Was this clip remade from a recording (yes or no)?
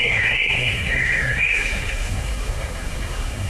yes